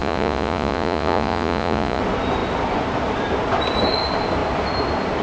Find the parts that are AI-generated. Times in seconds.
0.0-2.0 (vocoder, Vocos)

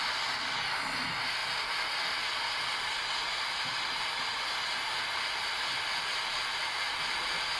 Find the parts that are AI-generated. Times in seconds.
none

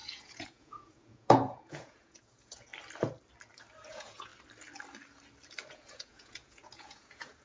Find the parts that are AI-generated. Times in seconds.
0.0-2.7 (vocoder, Vocos); 3.9-4.3; 5.7-7.4

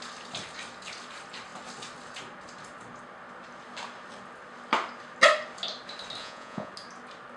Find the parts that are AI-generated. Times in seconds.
6.2-6.7 (vocoder, Vocos)

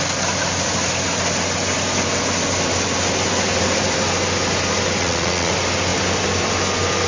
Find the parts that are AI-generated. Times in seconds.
5.0-5.5 (vocoder, Vocos)

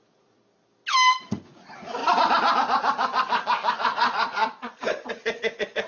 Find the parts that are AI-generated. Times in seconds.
0.0-0.4 (vocoder, Vocos); 1.2-2.0; 3.7-5.9

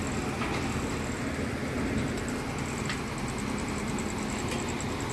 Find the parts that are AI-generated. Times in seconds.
none

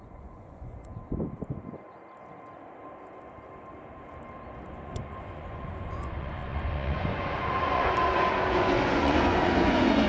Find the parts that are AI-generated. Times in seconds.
0.0-0.9 (vocoder, Vocos); 4.7-10.1